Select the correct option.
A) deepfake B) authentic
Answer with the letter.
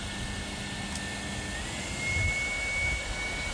B